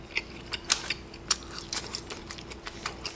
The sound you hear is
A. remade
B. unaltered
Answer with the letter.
B